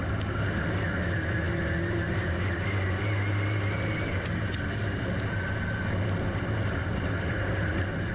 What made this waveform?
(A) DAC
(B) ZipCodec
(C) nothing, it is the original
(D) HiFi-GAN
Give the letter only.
C